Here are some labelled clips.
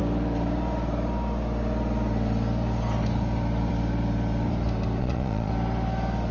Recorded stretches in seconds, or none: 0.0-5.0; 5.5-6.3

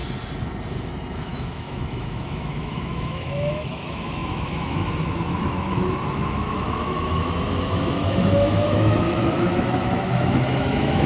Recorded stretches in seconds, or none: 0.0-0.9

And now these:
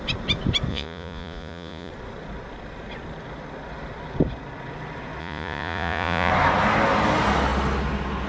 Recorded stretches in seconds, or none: 0.0-0.7; 1.9-5.2; 6.3-8.3

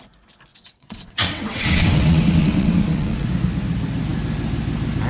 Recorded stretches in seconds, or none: 0.0-0.5; 3.3-5.1

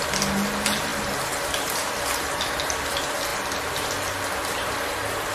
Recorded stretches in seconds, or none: 0.0-5.3

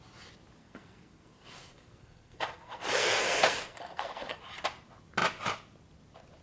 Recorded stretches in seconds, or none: 0.0-0.6; 4.4-6.4

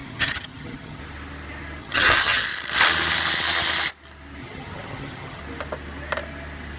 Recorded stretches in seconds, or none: 1.0-1.8; 2.4-4.4; 5.4-6.8

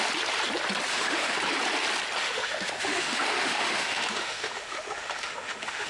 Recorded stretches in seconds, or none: 0.0-0.9; 1.4-2.2